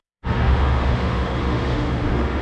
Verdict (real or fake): fake